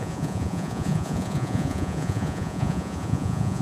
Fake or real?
fake